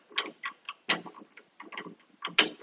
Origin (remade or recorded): recorded